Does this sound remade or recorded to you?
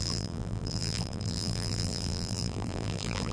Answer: remade